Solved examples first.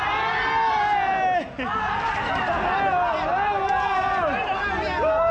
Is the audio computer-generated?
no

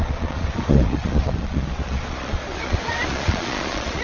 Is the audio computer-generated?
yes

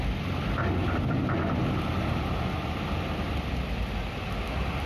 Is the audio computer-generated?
no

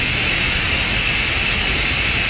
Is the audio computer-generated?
no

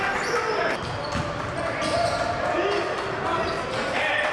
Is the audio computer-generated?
no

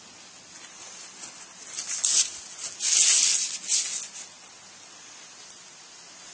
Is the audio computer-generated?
no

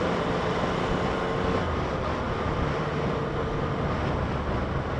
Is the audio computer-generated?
no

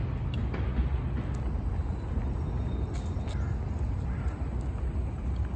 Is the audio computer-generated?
no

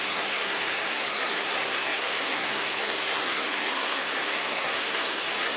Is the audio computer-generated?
yes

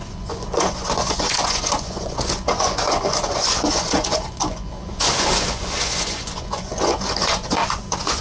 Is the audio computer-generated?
yes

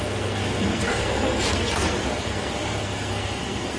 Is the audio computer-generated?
yes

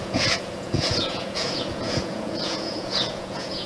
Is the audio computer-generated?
yes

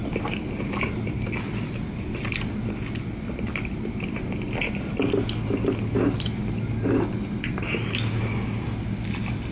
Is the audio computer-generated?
no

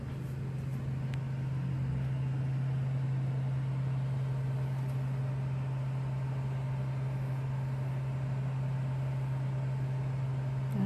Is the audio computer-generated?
no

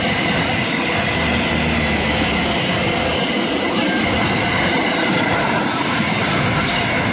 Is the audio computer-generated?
no